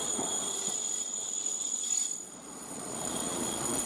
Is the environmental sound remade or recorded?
remade